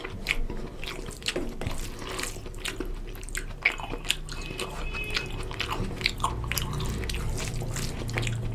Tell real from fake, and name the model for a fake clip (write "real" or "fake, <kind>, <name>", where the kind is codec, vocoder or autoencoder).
real